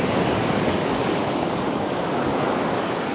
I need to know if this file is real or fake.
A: fake